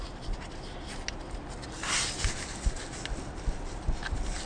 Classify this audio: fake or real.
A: real